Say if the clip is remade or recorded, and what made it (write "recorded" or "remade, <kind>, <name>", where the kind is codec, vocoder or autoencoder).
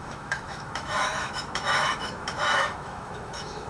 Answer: remade, autoencoder, DAC-VAE